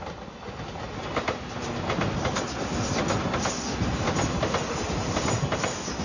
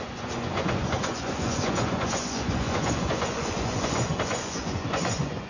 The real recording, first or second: first